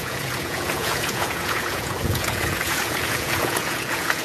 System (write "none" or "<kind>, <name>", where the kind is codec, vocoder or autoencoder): vocoder, Vocos